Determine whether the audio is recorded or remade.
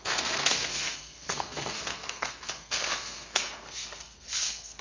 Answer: remade